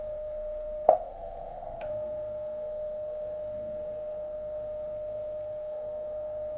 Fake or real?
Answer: fake